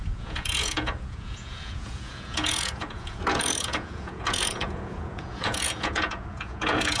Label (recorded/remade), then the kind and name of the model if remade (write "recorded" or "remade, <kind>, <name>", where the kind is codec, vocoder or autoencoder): remade, vocoder, Vocos